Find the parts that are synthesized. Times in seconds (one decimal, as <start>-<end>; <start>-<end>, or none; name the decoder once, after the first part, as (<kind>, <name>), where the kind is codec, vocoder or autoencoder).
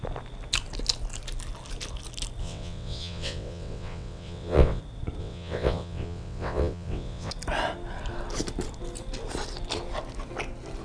2.4-4.8 (vocoder, WaveNeXt); 5.2-7.3